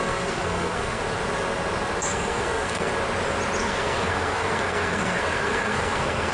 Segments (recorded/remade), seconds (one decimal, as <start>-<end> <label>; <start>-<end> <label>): 0.0-1.0 remade; 1.0-2.0 recorded; 2.0-2.9 remade; 2.9-3.6 recorded; 3.6-6.3 remade